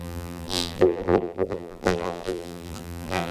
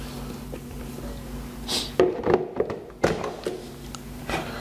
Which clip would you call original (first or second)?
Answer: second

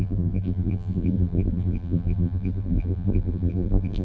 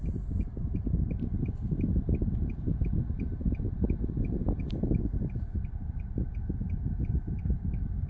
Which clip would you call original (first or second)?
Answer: second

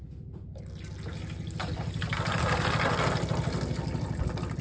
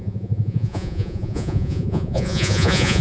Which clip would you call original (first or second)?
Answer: first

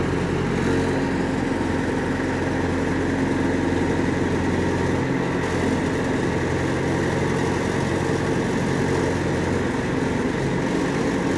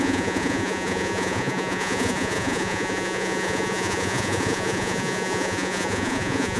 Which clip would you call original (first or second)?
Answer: first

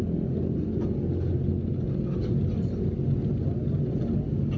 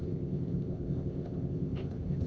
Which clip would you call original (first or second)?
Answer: first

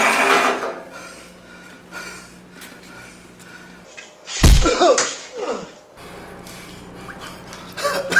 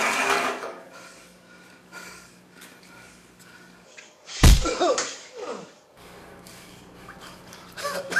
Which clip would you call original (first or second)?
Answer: first